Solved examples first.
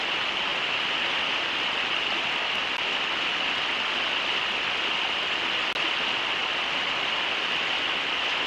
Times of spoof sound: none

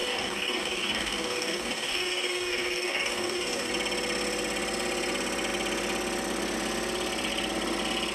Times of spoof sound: 0.0-3.7 (codec, DAC)

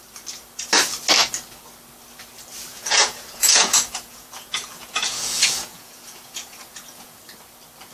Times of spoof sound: 2.7-7.2 (vocoder, Vocos)